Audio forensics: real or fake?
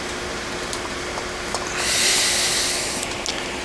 real